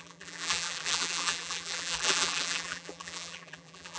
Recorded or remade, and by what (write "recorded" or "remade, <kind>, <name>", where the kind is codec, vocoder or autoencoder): remade, vocoder, BigVGAN v2